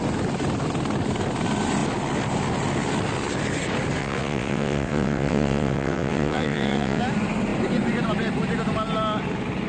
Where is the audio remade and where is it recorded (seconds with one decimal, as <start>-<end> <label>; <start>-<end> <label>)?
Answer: 0.0-4.0 recorded; 4.0-7.0 remade; 7.0-9.7 recorded